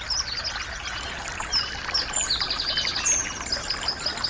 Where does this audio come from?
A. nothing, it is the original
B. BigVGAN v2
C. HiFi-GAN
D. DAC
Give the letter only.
A